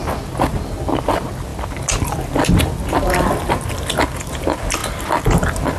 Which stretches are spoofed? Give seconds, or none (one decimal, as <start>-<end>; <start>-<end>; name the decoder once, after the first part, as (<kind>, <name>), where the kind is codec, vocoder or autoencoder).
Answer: none